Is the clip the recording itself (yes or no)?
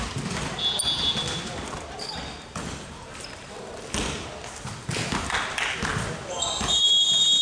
yes